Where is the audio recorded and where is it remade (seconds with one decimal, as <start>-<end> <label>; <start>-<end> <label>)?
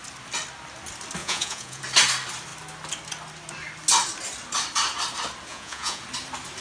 0.0-1.2 recorded; 1.2-1.8 remade; 1.8-5.5 recorded; 5.5-6.0 remade; 6.0-6.6 recorded